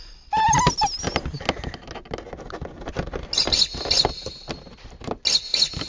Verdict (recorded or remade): recorded